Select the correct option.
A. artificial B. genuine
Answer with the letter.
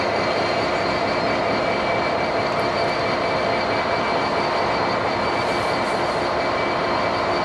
B